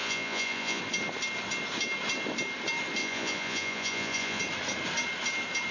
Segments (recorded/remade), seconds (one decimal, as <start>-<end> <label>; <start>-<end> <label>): 0.0-0.8 remade; 0.8-3.0 recorded; 3.0-4.4 remade; 4.4-5.7 recorded